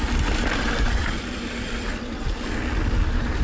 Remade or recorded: recorded